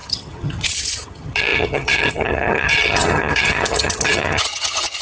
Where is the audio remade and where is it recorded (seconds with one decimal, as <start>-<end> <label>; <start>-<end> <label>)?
0.0-5.0 remade